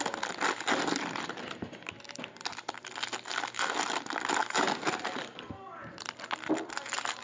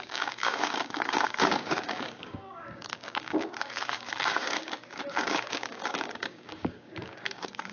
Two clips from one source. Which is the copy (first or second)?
second